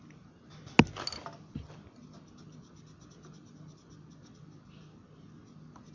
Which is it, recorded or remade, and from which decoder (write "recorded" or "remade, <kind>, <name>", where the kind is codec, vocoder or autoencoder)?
recorded